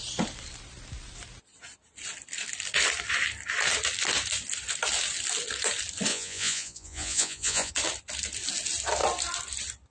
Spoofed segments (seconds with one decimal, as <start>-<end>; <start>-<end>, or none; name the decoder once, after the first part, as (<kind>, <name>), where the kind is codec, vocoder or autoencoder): 6.1-7.7 (vocoder, Vocos)